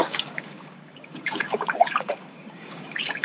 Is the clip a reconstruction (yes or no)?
yes